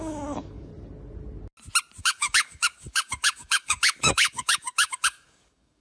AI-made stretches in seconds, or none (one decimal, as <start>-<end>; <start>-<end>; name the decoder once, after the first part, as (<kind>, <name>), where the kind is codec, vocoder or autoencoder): 0.0-0.7 (codec, DAC); 2.0-5.8

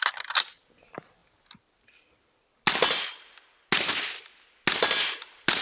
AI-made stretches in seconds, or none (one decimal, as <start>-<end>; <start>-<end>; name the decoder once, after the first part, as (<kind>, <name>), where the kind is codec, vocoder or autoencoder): none

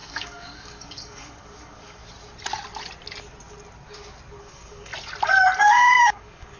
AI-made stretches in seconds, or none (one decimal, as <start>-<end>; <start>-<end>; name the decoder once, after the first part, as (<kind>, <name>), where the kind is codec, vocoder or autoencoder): 0.0-2.0 (codec, DAC); 4.4-4.9; 5.6-6.6

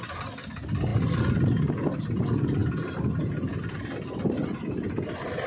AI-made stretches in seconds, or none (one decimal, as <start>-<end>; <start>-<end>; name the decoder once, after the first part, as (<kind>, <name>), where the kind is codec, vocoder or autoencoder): none

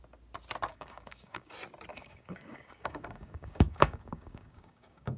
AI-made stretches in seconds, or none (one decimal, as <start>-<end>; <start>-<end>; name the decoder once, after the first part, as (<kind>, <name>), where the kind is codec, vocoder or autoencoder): 0.7-1.5 (codec, DAC); 1.9-5.2